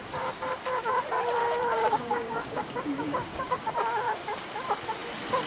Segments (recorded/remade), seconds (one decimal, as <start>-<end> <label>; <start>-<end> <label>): 0.0-1.4 recorded; 1.4-3.7 remade; 3.7-5.5 recorded